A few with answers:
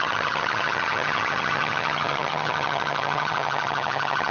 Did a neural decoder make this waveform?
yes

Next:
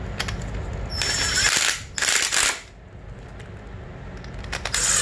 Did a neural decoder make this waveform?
no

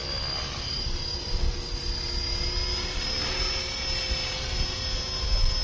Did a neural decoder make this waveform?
no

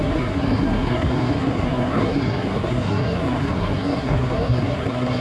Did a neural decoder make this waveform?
yes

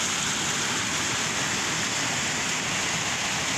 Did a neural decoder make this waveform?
no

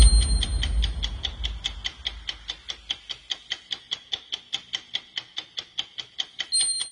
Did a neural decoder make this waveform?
no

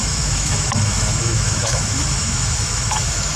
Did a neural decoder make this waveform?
yes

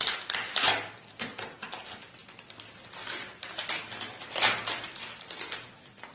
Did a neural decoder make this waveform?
no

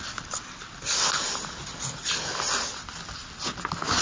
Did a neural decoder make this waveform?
no